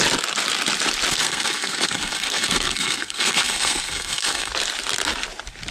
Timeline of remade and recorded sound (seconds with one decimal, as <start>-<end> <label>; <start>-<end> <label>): 0.0-1.1 recorded; 1.1-4.5 remade; 4.5-5.7 recorded